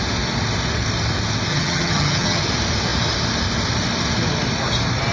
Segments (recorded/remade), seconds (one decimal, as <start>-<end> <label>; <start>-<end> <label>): 0.0-1.5 recorded; 1.5-2.4 remade; 2.4-5.1 recorded